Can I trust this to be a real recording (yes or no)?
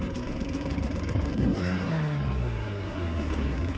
no